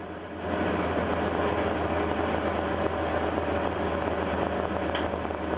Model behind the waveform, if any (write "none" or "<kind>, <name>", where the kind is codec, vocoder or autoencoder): none